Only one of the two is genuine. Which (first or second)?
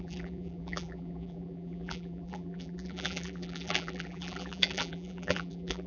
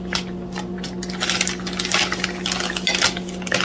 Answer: second